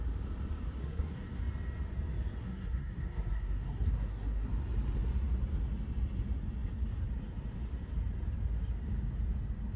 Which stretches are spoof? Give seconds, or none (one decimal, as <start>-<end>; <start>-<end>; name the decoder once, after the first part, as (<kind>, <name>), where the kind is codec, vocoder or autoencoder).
0.8-1.4 (codec, SNAC); 2.4-4.5